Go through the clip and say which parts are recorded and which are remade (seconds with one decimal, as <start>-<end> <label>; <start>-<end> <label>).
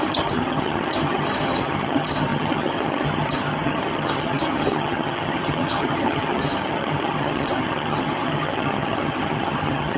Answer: 0.0-10.0 remade